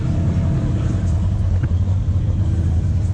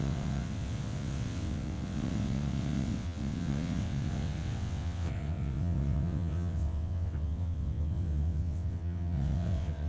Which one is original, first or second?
first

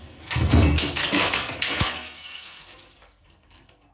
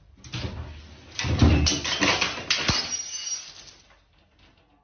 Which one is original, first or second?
second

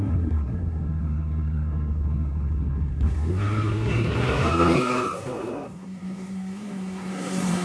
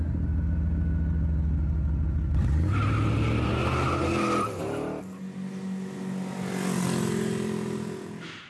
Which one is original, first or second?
second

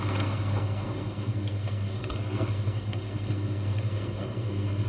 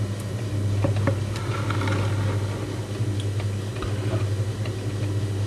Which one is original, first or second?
second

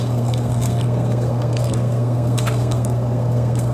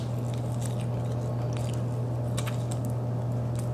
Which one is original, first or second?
second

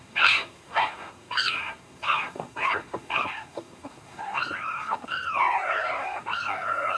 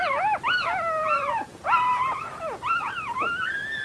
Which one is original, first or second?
second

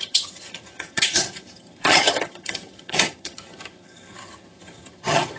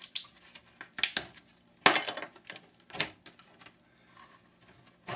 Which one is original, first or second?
second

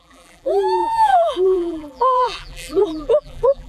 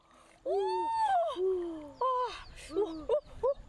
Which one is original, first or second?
second